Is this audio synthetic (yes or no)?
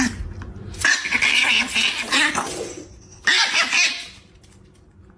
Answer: no